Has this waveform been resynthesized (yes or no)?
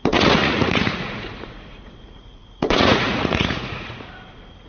yes